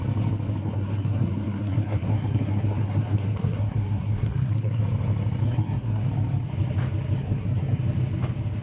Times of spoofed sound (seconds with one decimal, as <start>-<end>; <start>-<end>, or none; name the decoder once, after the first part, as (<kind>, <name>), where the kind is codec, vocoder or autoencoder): 0.6-4.8 (codec, SNAC); 5.4-6.1; 7.2-7.8